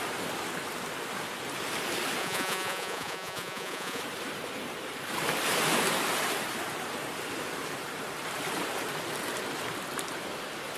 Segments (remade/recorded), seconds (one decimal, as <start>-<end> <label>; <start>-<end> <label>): 0.0-2.2 recorded; 2.2-4.0 remade; 4.0-10.8 recorded